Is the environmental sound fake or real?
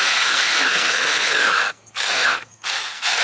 fake